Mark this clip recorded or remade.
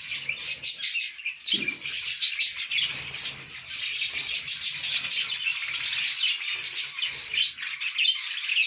recorded